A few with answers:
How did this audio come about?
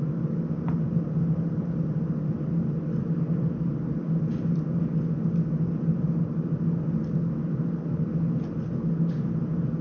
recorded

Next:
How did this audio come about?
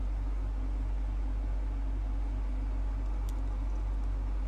recorded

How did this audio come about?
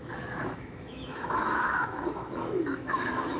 remade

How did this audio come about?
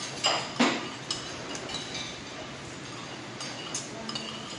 recorded